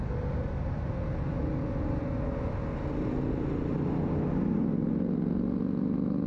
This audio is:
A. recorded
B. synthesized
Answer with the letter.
A